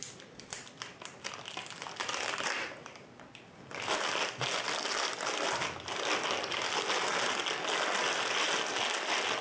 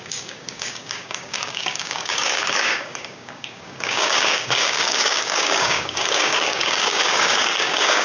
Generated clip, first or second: second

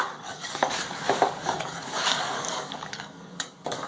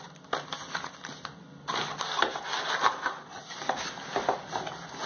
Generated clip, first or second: first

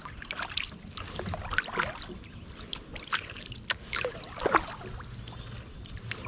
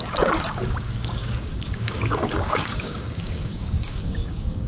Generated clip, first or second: second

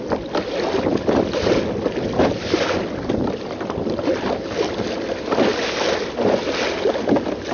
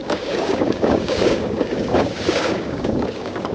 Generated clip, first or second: second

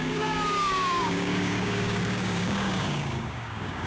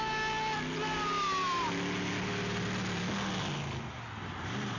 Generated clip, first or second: first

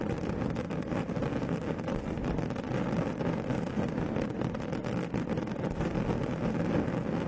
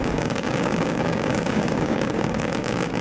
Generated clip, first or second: second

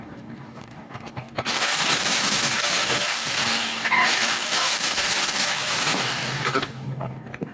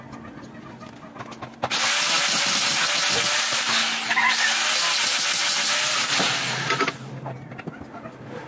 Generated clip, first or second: first